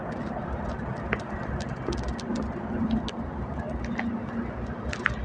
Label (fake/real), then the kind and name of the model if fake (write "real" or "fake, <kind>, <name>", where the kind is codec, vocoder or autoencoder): real